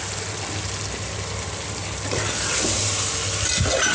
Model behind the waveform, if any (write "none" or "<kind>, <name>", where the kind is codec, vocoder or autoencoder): none